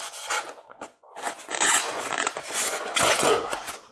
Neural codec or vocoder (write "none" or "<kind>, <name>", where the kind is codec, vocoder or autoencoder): vocoder, Vocos